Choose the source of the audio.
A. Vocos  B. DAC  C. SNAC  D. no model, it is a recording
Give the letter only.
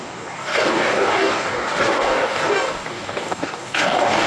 B